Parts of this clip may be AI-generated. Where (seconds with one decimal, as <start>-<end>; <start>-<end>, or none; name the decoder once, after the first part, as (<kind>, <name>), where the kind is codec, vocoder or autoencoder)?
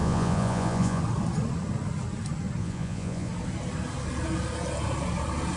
0.0-1.0 (vocoder, Vocos); 2.6-3.3